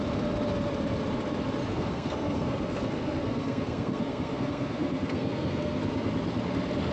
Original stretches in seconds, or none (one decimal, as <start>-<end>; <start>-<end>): 0.0-1.7; 5.8-6.9